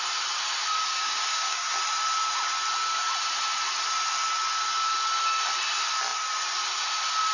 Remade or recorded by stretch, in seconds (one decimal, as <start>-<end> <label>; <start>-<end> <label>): 0.0-0.9 recorded; 0.9-1.7 remade; 1.7-7.3 recorded